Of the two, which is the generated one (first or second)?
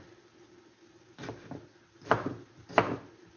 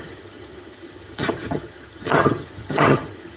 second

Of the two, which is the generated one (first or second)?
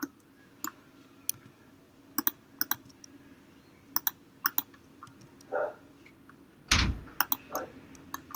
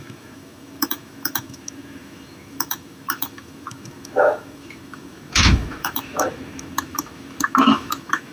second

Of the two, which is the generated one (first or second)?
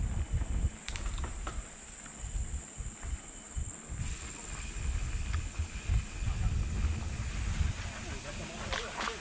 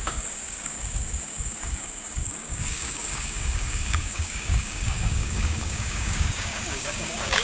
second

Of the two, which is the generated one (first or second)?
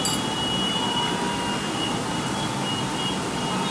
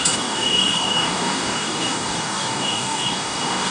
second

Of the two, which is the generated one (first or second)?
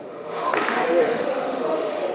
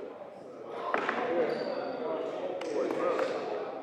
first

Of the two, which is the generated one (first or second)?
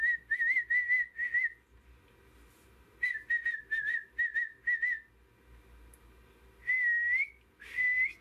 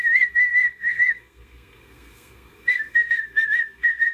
second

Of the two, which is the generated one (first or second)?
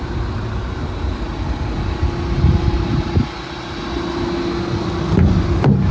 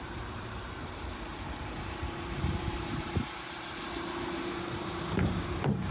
second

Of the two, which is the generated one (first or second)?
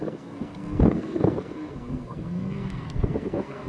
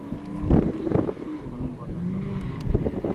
first